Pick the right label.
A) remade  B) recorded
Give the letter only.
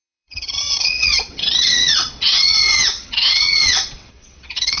A